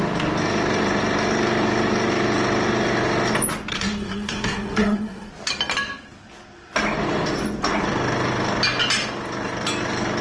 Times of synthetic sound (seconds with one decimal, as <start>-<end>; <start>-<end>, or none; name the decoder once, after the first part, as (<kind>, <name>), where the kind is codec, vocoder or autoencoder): 3.7-5.3 (codec, SNAC)